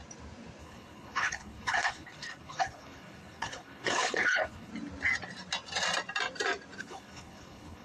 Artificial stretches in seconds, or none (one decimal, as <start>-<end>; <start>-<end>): 0.6-4.7; 6.8-7.8